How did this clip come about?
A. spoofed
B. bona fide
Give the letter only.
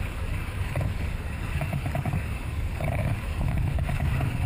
A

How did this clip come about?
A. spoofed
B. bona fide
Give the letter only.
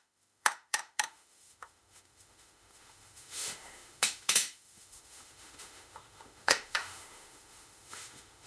A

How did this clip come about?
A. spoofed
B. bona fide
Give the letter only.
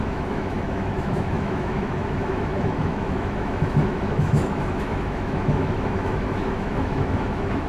A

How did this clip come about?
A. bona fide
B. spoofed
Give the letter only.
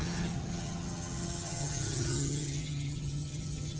B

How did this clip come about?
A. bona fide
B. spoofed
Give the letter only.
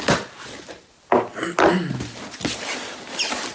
A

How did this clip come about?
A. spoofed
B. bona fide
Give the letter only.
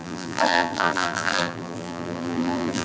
A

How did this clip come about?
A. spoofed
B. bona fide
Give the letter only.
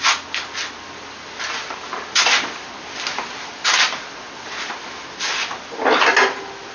B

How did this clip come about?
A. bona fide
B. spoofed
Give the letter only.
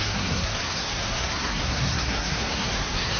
B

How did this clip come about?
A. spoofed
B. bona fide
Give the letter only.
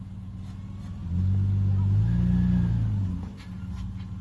B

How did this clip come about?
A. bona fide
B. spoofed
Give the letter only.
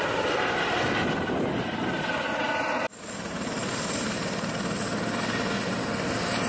A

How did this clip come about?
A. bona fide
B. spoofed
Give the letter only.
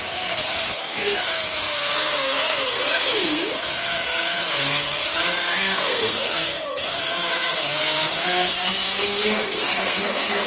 B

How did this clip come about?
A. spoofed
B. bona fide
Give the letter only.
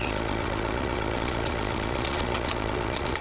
A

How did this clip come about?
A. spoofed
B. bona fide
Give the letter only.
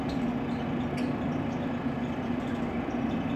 B